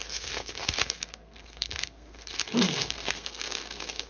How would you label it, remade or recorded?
remade